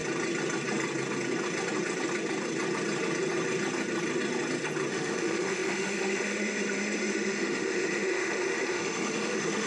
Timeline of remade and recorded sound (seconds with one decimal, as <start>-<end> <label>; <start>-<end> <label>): 0.0-4.9 recorded; 4.9-9.7 remade